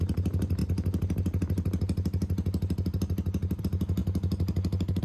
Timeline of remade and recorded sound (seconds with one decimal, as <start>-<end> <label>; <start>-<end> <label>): 0.0-5.0 recorded